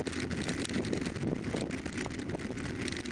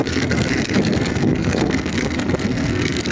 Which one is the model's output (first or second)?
second